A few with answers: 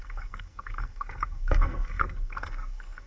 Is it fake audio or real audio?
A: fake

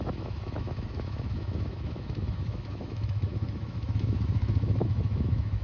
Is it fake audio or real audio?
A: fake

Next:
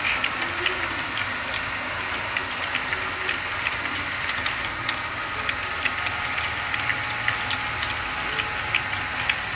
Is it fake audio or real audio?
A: real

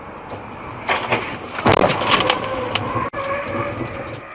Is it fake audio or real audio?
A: real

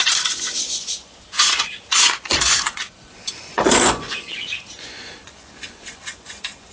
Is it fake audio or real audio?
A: fake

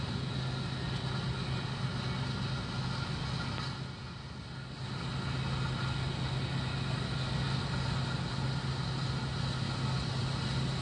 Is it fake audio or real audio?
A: real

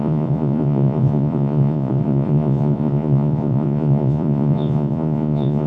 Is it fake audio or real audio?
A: fake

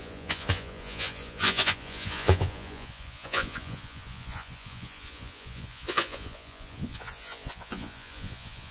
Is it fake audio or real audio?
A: fake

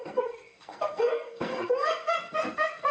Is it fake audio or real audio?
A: fake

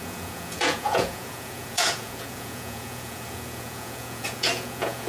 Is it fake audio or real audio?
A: fake